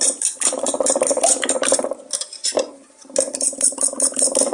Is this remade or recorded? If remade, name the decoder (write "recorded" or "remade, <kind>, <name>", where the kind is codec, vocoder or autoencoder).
recorded